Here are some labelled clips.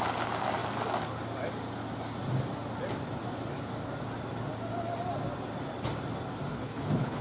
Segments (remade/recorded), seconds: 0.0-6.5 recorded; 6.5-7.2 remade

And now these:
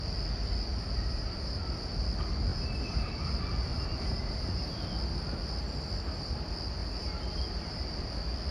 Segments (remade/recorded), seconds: 0.0-0.7 recorded; 0.7-1.8 remade; 1.8-2.5 recorded; 2.5-3.1 remade; 3.1-3.7 recorded; 3.7-4.9 remade; 4.9-6.8 recorded; 6.8-8.1 remade; 8.1-8.5 recorded

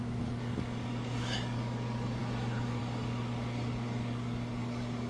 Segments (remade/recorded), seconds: 0.0-5.1 remade

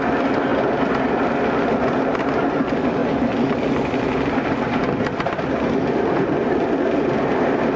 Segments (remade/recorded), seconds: 0.0-7.8 recorded

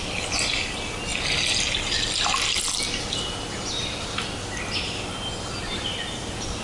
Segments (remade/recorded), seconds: 0.0-6.6 recorded

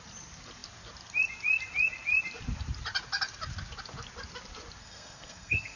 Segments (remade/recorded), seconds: 0.0-4.8 recorded; 4.8-5.8 remade

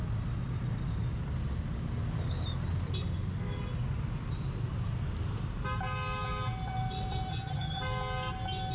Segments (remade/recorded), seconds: 0.0-7.3 recorded; 7.3-7.8 remade; 7.8-8.7 recorded

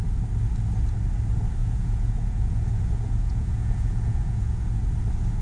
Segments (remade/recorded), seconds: 0.0-1.6 recorded; 1.6-4.8 remade; 4.8-5.4 recorded